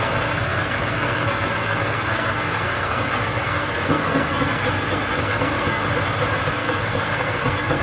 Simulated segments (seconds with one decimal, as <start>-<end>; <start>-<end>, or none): 0.0-5.8; 6.5-7.8